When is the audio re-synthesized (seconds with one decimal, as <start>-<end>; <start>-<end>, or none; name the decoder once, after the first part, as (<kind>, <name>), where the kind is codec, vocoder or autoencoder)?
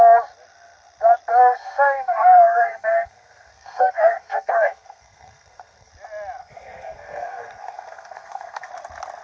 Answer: 1.4-5.9 (codec, SNAC); 6.4-8.7